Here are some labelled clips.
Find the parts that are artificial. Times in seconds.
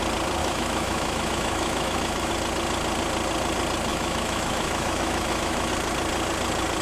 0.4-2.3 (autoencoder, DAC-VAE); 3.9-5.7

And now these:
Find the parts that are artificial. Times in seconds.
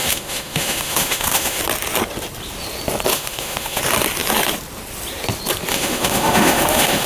0.0-1.6 (autoencoder, DAC-VAE); 3.1-3.8; 5.7-7.1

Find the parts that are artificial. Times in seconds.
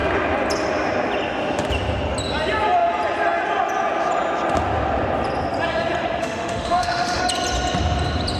6.2-7.2 (autoencoder, DAC-VAE)